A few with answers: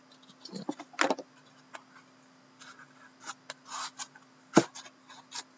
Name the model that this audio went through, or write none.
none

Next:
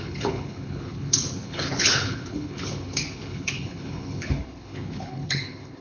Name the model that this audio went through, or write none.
codec, HILCodec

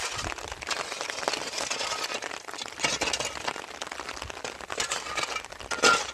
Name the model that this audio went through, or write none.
none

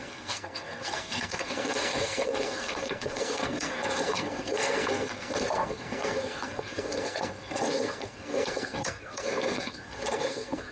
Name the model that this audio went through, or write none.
codec, SNAC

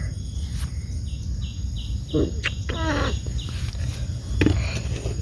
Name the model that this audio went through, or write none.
none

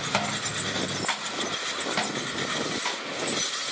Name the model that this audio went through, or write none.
none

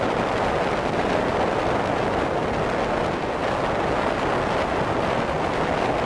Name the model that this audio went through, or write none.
none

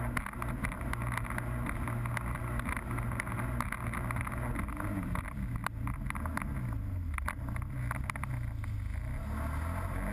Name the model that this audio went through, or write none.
none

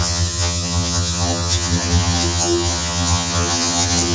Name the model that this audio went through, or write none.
vocoder, HiFi-GAN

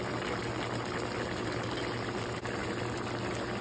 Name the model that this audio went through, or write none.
none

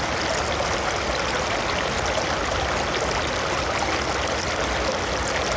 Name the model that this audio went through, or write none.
none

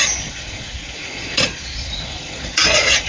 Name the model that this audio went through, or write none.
vocoder, Vocos